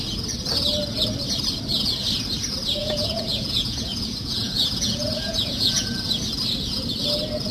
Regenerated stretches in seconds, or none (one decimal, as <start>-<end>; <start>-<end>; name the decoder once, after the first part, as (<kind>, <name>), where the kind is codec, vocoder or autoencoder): 2.8-6.1 (vocoder, Vocos)